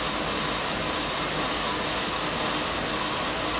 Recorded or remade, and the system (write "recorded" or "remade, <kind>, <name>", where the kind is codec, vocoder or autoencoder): recorded